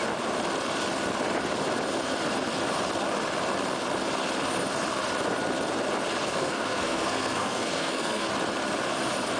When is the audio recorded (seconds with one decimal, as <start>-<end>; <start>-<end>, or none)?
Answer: 0.0-6.2; 8.3-9.4